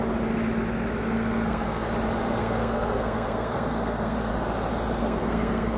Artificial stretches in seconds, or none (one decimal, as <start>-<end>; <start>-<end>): 1.0-1.9; 2.4-4.3; 5.0-5.8